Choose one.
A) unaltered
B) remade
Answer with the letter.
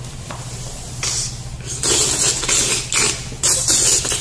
A